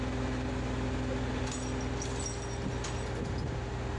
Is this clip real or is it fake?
real